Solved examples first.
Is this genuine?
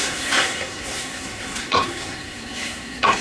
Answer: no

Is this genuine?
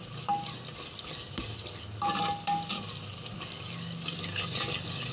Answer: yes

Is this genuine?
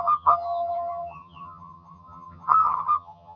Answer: no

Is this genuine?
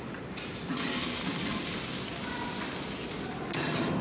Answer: yes